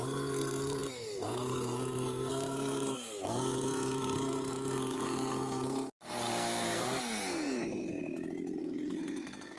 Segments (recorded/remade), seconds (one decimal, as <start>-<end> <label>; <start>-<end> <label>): 0.0-8.0 remade; 8.0-8.6 recorded; 8.6-9.6 remade